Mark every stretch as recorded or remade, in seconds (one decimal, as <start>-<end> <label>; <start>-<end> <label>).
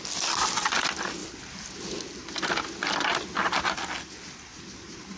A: 0.0-5.2 recorded